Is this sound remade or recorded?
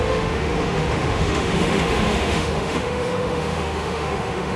remade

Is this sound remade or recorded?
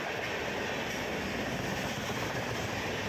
recorded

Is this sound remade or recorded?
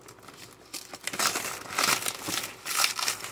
recorded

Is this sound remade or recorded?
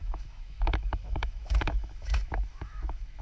remade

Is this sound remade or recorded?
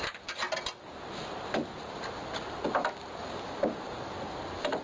recorded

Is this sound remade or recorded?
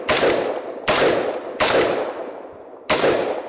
recorded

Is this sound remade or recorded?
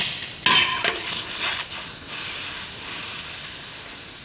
recorded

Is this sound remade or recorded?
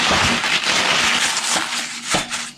recorded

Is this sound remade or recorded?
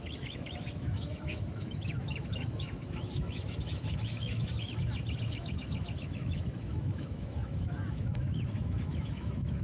remade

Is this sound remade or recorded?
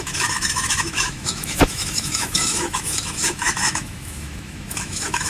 remade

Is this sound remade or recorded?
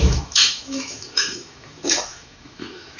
remade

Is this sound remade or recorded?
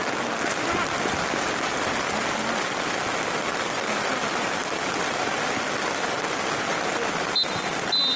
recorded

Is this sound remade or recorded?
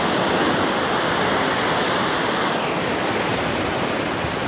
recorded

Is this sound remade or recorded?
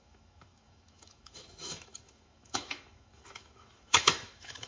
remade